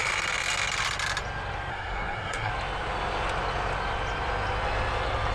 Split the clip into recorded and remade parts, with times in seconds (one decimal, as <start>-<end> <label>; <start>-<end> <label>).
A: 0.0-1.7 recorded; 1.7-2.5 remade; 2.5-5.3 recorded